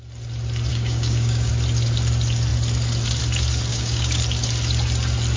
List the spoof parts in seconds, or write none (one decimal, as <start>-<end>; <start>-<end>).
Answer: 0.7-1.5; 3.7-4.2